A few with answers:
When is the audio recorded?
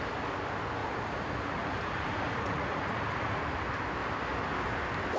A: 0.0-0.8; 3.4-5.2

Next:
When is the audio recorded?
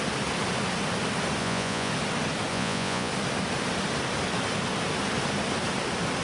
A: 0.0-1.4; 1.9-2.5; 3.1-6.2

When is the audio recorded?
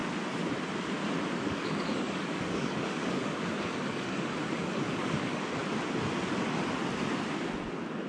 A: 0.0-1.4; 5.6-8.1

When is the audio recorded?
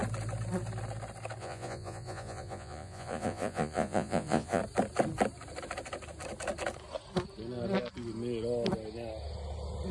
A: 0.0-1.4; 4.6-9.9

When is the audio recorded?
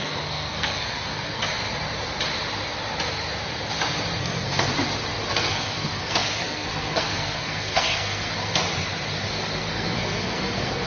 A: 1.4-4.2; 4.7-5.3; 8.6-9.3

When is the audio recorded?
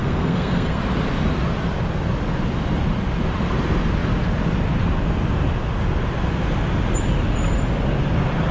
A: 0.8-8.5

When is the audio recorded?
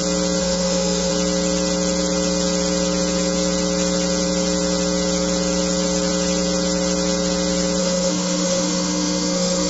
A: 0.0-0.4; 1.1-7.8